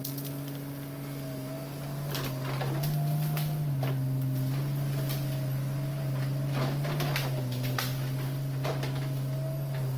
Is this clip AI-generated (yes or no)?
no